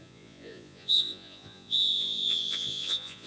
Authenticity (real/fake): fake